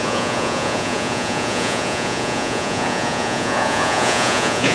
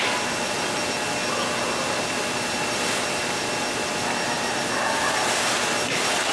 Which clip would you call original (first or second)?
second